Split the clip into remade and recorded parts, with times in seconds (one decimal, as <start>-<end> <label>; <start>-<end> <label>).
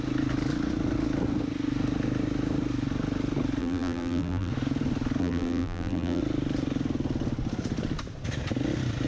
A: 0.0-3.6 recorded; 3.6-4.5 remade; 4.5-5.2 recorded; 5.2-6.2 remade; 6.2-9.1 recorded